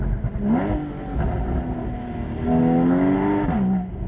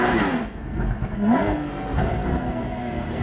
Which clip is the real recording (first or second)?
first